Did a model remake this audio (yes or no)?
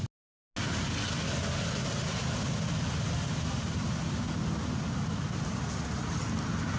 no